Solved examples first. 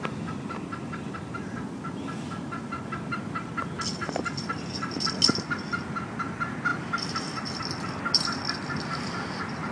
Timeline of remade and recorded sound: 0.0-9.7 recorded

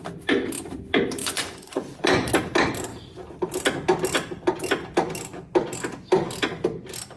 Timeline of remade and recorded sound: 0.0-1.2 recorded; 1.2-2.3 remade; 2.3-7.2 recorded

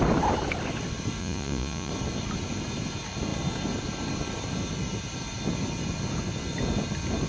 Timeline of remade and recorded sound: 0.0-1.2 recorded; 1.2-1.9 remade; 1.9-7.3 recorded